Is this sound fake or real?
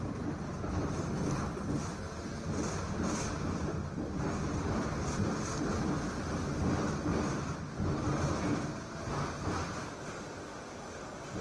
real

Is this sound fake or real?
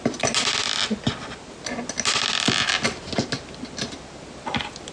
real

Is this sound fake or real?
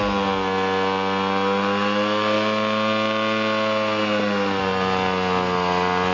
real